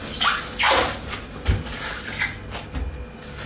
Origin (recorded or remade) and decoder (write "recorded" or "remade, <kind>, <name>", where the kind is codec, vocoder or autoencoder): recorded